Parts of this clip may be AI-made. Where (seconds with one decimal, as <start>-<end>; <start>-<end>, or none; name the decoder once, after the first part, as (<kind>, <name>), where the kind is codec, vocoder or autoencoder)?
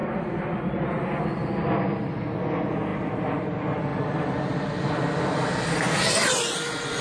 2.9-3.5 (vocoder, BigVGAN v2); 3.9-4.9